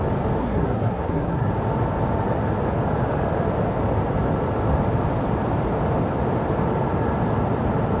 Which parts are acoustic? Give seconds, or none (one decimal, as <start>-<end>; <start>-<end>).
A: 0.0-0.4; 1.5-8.0